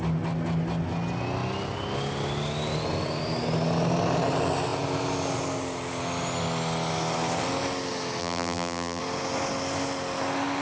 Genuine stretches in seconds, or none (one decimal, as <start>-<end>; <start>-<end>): 0.0-8.2; 9.0-10.6